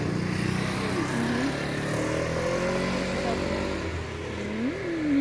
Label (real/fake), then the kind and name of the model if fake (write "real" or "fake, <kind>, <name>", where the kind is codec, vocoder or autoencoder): real